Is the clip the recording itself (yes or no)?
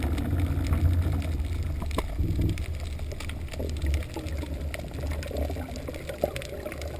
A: yes